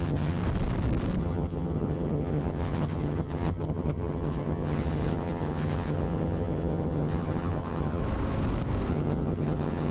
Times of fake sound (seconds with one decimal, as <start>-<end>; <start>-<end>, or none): 0.0-0.4; 1.2-8.0; 8.9-9.9